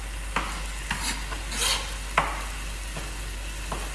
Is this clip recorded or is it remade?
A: recorded